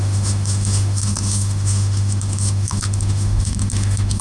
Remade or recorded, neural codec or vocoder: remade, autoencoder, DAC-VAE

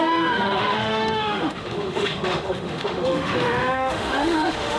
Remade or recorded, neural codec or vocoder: remade, autoencoder, DAC-VAE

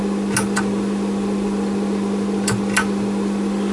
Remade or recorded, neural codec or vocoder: recorded